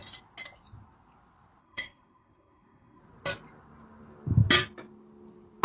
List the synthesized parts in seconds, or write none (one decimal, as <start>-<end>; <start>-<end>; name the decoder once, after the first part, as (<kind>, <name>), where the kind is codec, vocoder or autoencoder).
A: 1.6-3.0 (codec, SNAC)